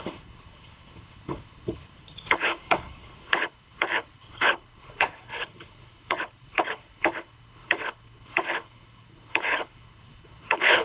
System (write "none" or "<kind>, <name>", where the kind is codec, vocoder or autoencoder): codec, HILCodec